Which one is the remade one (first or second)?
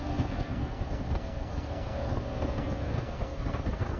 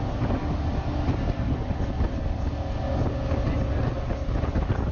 first